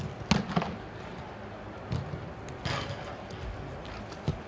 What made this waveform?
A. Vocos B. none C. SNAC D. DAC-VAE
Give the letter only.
B